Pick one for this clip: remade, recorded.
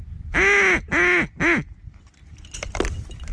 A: recorded